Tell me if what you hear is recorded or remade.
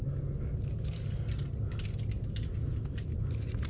recorded